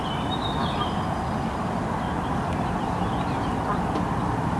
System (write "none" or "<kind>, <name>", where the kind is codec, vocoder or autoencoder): none